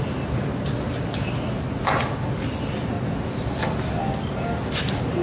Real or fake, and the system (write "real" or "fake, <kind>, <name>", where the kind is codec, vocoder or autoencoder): real